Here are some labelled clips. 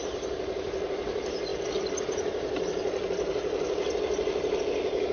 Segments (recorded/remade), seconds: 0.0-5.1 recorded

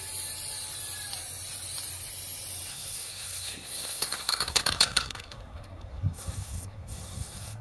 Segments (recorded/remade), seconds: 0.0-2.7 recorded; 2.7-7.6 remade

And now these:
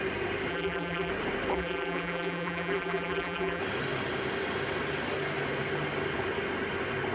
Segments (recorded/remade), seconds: 0.0-0.5 recorded; 0.5-1.1 remade; 1.1-1.5 recorded; 1.5-3.6 remade; 3.6-7.1 recorded

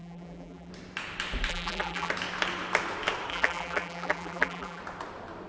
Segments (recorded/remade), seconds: 0.0-0.7 remade; 0.7-1.5 recorded; 1.5-2.1 remade; 2.1-3.3 recorded; 3.3-4.8 remade; 4.8-5.5 recorded

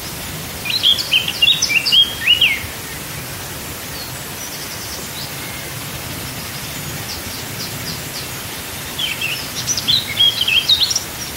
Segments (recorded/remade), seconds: 0.0-0.9 remade; 0.9-4.6 recorded; 4.6-11.4 remade

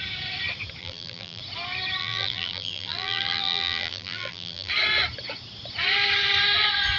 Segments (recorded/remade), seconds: 0.0-0.8 recorded; 0.8-1.4 remade; 1.4-2.0 recorded; 2.0-4.7 remade; 4.7-7.0 recorded

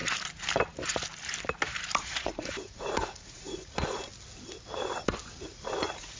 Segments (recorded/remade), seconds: 0.0-2.0 recorded; 2.0-4.1 remade; 4.1-5.4 recorded; 5.4-6.2 remade